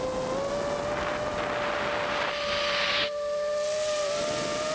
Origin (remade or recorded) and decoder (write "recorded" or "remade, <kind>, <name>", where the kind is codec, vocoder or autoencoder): recorded